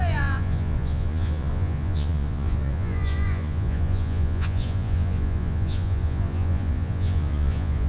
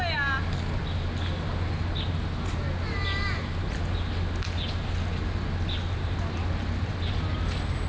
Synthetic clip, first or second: first